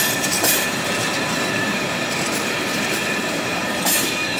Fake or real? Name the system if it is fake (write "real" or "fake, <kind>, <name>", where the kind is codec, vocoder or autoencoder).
fake, vocoder, BigVGAN v2